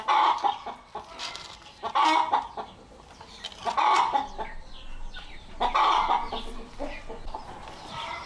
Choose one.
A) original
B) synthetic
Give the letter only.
A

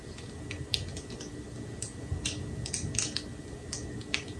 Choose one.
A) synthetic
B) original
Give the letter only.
B